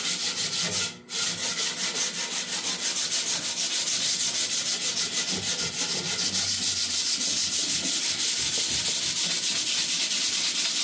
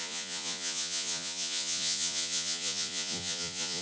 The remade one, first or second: second